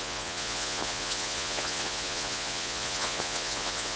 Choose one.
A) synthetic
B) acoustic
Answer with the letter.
A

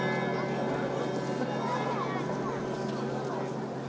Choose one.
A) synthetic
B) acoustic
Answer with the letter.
B